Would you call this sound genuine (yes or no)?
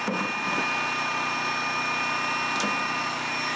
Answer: yes